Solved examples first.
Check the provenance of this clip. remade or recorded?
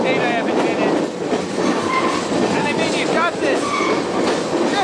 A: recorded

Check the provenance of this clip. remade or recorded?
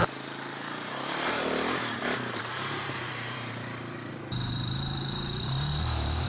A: remade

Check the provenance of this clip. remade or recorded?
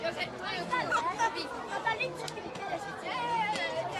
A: recorded